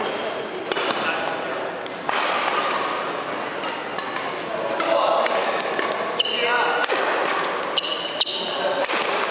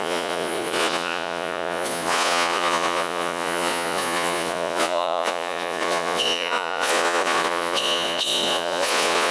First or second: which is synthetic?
second